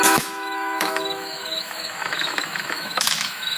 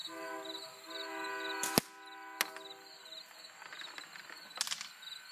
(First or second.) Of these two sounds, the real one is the second